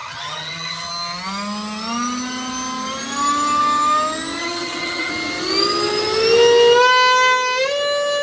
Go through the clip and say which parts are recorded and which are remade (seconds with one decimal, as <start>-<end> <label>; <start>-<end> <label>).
0.0-0.9 remade; 0.9-4.4 recorded; 4.4-5.1 remade; 5.1-8.2 recorded